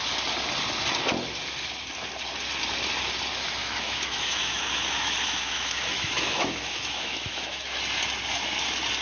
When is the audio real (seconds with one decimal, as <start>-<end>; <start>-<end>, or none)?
0.0-3.6; 7.8-9.0